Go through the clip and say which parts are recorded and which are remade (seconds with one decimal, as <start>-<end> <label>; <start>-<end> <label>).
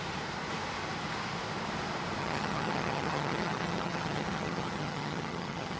0.0-2.2 recorded; 2.2-5.8 remade